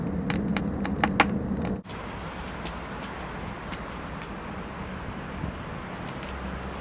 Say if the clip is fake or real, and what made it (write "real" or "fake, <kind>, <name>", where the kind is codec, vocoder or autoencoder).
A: real